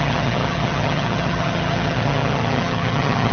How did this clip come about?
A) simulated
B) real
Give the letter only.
A